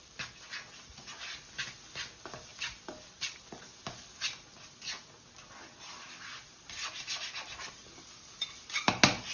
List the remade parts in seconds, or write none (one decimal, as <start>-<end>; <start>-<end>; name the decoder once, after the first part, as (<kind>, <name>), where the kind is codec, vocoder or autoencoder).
2.5-5.7 (vocoder, BigVGAN v2); 7.8-8.9